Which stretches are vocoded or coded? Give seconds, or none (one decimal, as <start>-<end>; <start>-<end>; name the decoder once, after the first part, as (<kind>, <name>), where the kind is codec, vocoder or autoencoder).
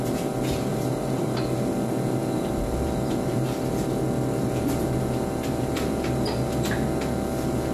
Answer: 0.7-1.4 (vocoder, BigVGAN v2)